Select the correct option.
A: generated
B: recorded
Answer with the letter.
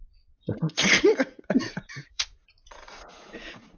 A